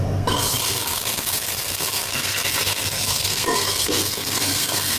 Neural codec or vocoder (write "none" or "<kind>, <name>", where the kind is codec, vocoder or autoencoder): codec, SNAC